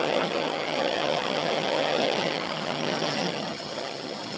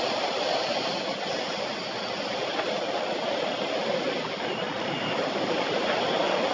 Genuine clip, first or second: second